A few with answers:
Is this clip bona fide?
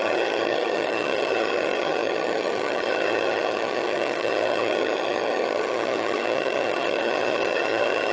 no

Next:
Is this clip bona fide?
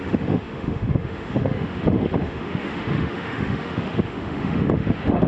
no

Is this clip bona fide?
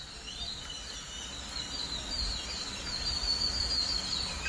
yes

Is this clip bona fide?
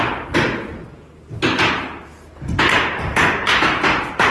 yes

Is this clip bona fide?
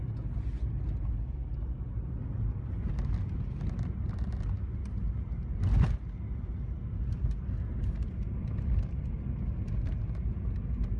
yes